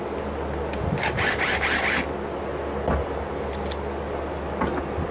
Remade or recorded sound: recorded